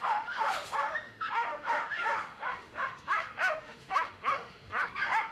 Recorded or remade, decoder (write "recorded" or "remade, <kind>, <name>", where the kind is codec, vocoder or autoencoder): remade, autoencoder, DAC-VAE